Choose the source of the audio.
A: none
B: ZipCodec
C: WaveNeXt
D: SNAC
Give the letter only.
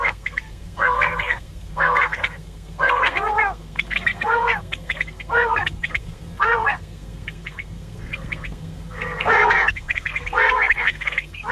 D